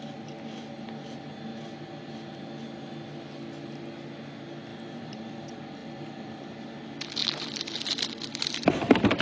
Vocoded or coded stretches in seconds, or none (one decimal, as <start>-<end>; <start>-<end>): 1.5-2.3; 4.7-5.2; 5.8-6.5; 7.2-8.0